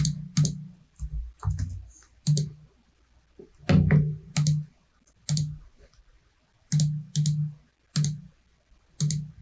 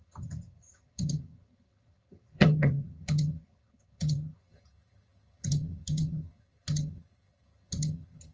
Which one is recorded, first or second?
first